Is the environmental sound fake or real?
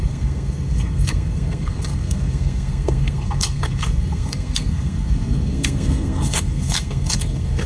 fake